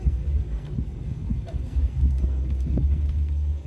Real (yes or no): no